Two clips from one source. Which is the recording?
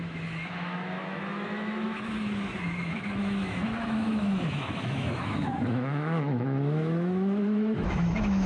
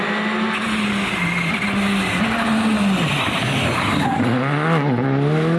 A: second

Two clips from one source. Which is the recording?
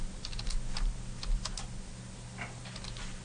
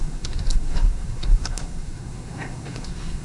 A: first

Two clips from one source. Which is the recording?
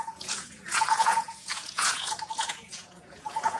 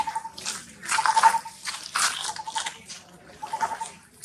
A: second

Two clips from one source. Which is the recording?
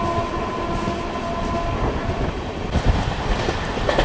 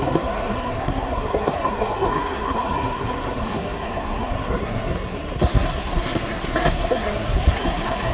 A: first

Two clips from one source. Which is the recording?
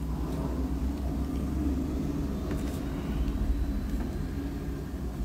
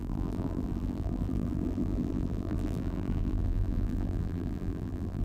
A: first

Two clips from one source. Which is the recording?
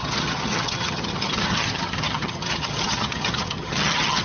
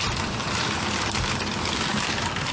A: second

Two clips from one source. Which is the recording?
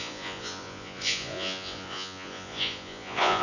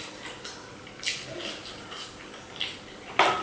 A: second